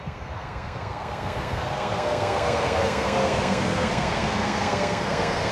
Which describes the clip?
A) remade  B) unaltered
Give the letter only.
A